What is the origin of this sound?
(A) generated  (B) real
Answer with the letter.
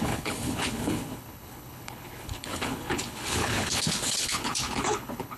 A